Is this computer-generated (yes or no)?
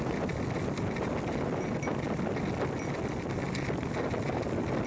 no